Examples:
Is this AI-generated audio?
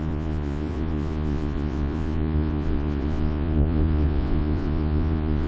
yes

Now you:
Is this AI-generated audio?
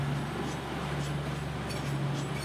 no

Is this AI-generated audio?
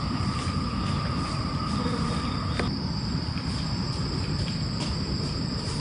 yes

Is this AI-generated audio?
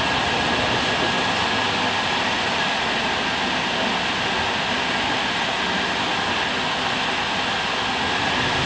no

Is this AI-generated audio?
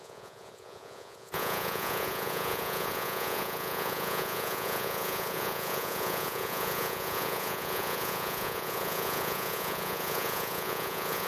yes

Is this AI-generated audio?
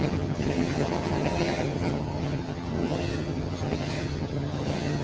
yes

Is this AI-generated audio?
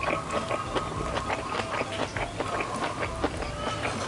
no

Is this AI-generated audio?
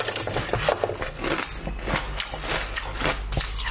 no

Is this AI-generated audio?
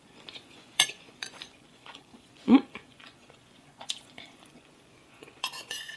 yes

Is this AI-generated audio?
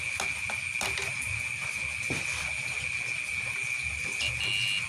no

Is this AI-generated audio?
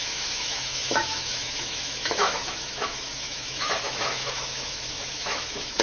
yes